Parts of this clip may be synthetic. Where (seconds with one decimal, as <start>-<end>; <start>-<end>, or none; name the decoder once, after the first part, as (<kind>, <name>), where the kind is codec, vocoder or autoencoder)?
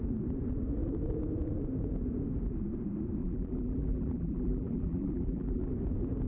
3.2-5.7 (vocoder, BigVGAN v2)